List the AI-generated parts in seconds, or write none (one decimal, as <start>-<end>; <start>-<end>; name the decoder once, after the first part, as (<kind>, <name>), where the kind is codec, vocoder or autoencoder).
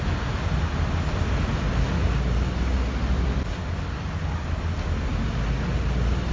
none